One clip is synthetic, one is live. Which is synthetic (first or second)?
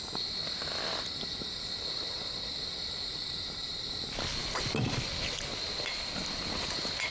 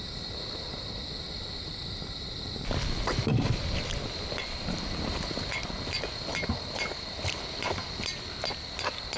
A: second